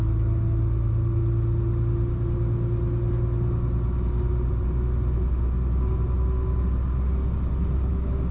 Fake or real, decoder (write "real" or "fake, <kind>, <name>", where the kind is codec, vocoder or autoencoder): real